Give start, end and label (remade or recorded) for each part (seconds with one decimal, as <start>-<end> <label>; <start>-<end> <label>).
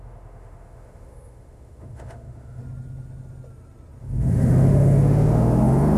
0.0-2.6 remade; 2.6-4.0 recorded; 4.0-6.0 remade